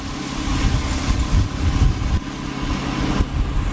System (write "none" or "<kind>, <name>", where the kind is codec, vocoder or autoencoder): none